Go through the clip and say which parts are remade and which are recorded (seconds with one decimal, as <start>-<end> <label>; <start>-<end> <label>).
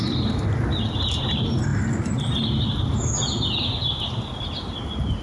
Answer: 0.0-5.2 recorded